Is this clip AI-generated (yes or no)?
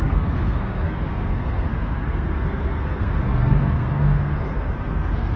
yes